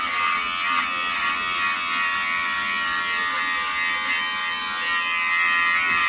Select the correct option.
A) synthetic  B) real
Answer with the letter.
B